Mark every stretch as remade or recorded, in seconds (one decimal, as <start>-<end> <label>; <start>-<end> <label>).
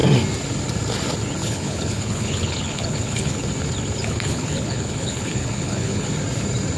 0.0-1.4 recorded; 1.4-3.5 remade; 3.5-4.0 recorded; 4.0-6.1 remade; 6.1-6.8 recorded